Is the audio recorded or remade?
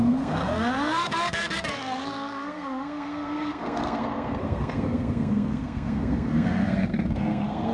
remade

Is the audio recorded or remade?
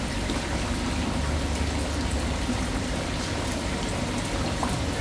recorded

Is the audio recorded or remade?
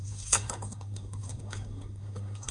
remade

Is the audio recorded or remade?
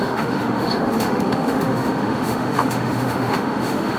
remade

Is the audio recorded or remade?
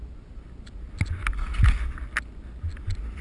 recorded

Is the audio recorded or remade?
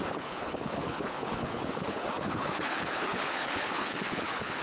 remade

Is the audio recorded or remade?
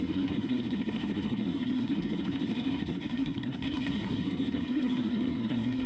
remade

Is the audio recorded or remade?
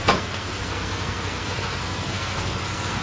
remade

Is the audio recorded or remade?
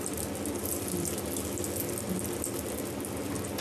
recorded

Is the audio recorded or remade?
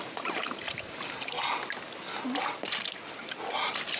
recorded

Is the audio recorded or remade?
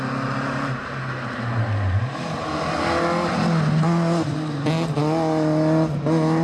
recorded